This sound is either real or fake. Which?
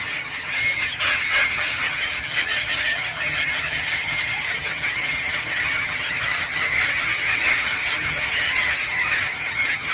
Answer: fake